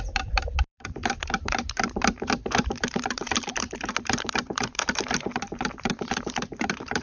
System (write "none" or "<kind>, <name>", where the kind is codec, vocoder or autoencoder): vocoder, BigVGAN v2